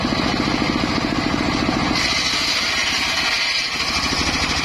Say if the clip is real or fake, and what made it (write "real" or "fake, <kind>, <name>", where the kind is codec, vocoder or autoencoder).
real